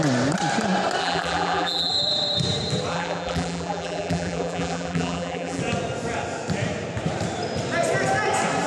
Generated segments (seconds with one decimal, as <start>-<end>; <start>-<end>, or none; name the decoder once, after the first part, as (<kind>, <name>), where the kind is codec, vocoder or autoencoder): 1.0-1.9 (vocoder, BigVGAN v2); 2.9-5.6